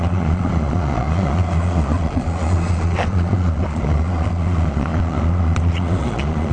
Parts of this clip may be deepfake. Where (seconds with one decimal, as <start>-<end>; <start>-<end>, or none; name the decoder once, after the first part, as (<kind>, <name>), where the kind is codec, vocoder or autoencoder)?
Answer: 0.0-6.5 (vocoder, Vocos)